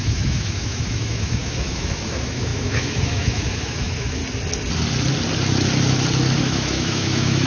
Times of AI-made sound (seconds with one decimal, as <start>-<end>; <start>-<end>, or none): 0.0-4.2; 6.4-7.5